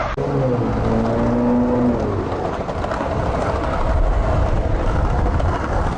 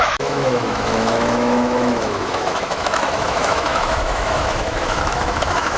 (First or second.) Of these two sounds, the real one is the first